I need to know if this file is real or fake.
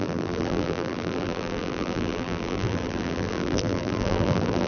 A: fake